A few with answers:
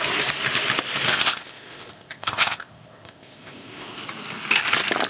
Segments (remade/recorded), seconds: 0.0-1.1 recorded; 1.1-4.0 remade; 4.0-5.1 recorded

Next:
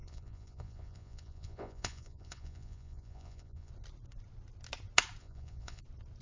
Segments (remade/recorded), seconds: 0.0-3.7 remade; 3.7-5.2 recorded; 5.2-5.8 remade; 5.8-6.2 recorded

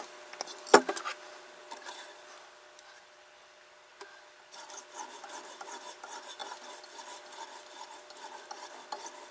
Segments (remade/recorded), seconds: 0.0-9.3 recorded